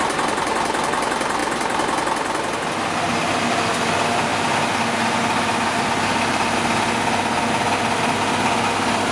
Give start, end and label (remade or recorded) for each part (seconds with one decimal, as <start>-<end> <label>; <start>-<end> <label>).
0.0-9.1 recorded